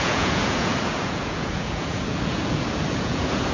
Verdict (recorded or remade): remade